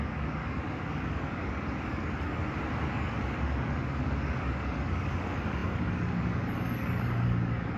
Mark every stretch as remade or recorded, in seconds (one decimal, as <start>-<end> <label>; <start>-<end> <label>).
0.0-2.4 remade; 2.4-2.9 recorded; 2.9-7.8 remade